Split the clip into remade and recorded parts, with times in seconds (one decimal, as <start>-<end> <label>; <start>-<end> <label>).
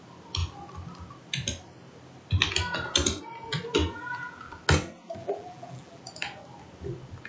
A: 0.0-3.8 recorded; 3.8-4.5 remade; 4.5-5.2 recorded; 5.2-6.0 remade; 6.0-7.3 recorded